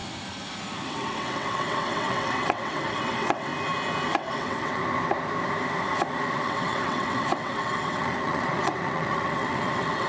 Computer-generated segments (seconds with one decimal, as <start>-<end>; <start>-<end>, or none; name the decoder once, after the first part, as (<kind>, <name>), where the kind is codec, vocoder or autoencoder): 0.9-3.5 (vocoder, WaveNeXt); 4.1-4.8; 6.3-10.1